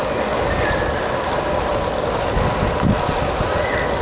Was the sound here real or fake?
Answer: real